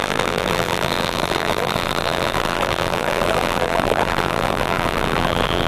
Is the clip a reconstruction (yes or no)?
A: yes